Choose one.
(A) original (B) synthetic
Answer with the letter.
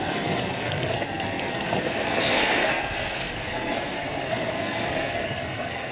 B